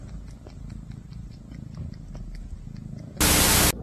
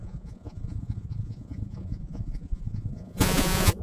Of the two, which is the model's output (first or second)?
second